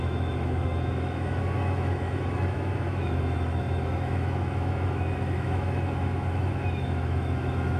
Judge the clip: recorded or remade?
remade